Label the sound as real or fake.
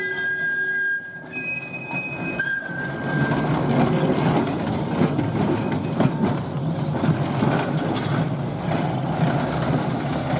real